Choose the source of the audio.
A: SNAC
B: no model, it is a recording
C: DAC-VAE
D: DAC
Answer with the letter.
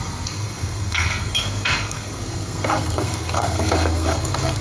A